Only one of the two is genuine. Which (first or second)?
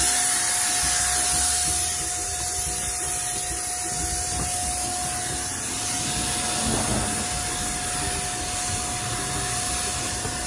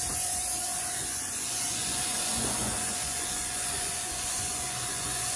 first